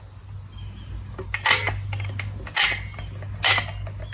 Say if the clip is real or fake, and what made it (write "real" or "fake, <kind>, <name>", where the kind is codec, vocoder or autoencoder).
real